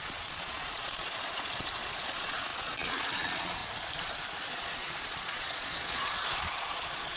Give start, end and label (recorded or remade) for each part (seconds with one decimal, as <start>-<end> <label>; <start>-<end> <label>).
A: 0.0-3.6 remade; 3.6-4.5 recorded; 4.5-7.2 remade